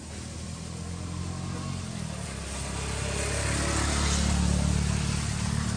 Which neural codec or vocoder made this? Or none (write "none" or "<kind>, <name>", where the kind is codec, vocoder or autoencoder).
none